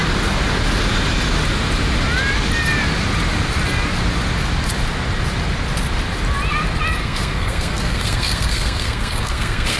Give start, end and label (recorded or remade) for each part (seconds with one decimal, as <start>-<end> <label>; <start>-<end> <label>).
0.0-7.0 recorded; 7.0-9.8 remade